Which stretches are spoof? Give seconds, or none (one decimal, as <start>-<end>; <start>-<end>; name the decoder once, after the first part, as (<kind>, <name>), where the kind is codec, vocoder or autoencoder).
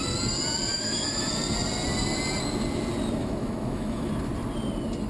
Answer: 0.7-1.3 (autoencoder, DAC-VAE); 3.2-4.1